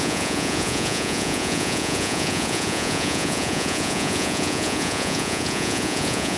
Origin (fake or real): fake